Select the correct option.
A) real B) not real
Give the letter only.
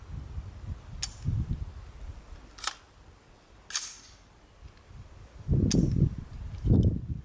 A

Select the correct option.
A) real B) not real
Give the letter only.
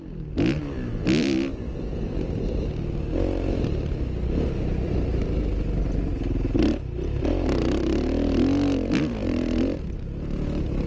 A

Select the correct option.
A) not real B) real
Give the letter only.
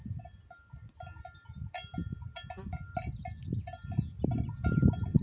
B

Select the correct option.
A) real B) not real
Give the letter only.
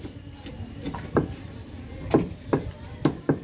A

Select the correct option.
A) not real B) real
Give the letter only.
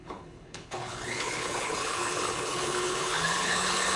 A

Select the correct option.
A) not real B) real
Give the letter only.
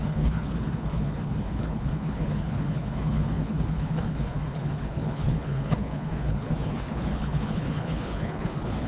A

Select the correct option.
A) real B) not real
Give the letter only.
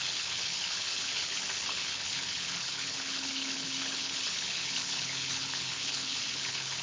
B